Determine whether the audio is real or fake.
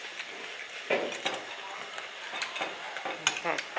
real